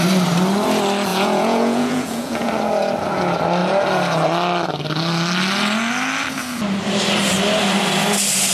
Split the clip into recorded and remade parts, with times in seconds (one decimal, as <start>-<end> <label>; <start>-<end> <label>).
0.0-1.1 recorded; 1.1-2.5 remade; 2.5-8.5 recorded